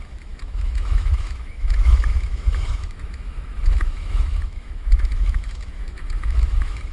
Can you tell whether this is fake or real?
fake